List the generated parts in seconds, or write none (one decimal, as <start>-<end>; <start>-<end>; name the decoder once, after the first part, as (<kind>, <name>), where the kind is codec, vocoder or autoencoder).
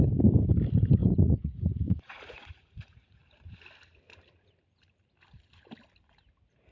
1.0-3.2 (vocoder, Vocos)